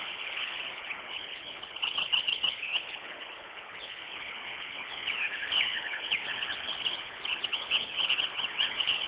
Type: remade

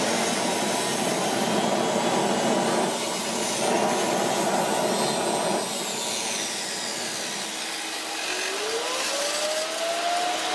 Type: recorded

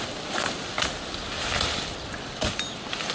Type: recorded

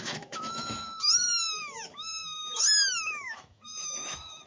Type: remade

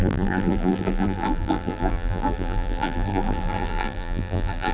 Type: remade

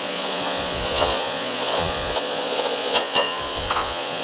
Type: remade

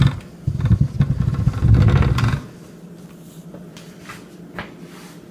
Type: recorded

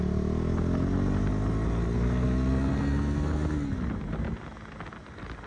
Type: recorded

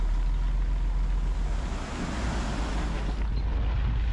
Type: recorded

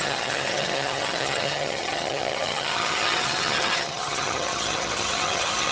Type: remade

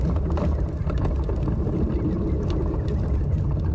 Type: recorded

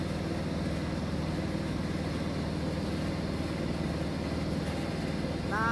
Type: recorded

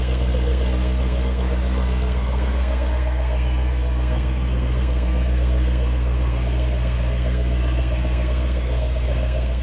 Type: remade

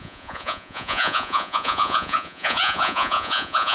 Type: remade